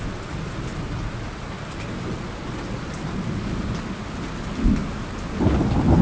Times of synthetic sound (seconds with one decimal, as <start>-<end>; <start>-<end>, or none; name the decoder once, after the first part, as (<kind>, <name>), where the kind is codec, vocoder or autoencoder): none